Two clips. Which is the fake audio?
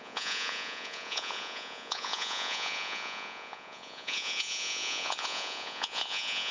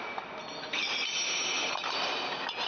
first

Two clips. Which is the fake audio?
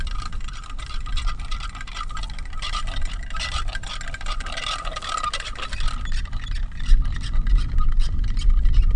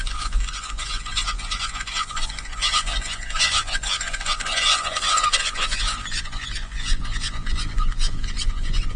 second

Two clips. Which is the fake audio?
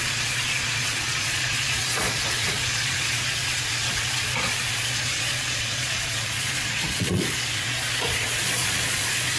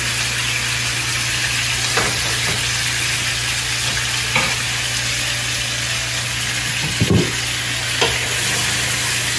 first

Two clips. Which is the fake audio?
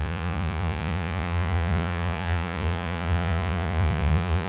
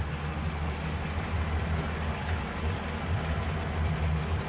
first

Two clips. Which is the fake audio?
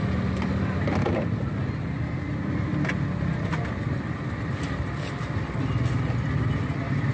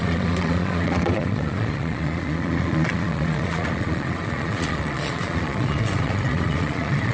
second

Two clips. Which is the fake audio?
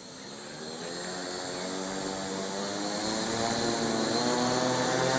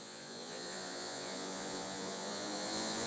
second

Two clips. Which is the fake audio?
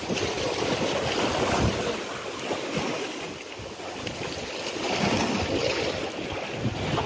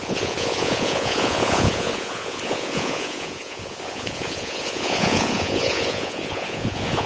second